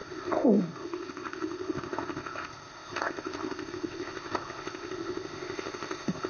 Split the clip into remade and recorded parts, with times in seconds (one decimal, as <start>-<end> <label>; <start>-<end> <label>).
0.0-6.3 remade